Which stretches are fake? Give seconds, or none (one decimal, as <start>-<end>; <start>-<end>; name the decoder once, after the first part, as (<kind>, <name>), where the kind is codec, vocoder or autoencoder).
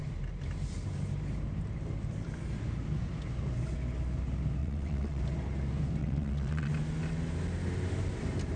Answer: 4.6-5.2 (vocoder, WaveNeXt); 6.0-6.7